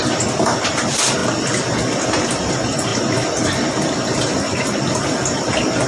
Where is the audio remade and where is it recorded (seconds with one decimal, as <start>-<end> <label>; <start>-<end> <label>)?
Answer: 0.0-5.9 recorded